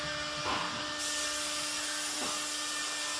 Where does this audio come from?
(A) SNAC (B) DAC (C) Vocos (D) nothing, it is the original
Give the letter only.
D